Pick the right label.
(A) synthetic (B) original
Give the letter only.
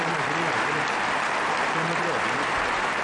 B